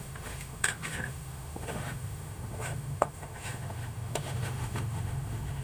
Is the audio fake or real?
fake